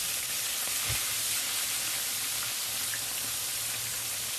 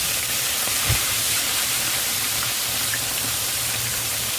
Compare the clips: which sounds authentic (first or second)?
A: first